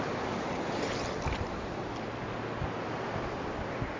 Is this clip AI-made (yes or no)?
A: no